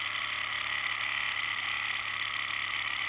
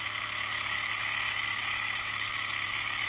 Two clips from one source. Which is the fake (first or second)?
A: second